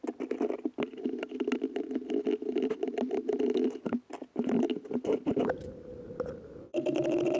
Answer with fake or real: real